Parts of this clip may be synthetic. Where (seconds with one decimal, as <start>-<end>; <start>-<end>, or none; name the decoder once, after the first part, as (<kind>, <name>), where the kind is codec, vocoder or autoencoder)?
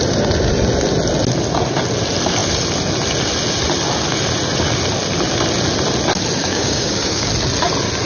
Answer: 6.4-7.3 (codec, DAC)